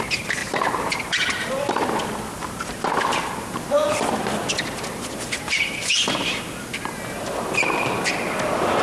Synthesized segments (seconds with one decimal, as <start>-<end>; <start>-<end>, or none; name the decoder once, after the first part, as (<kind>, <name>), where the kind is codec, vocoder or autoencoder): 0.4-1.5 (vocoder, BigVGAN v2); 2.4-4.1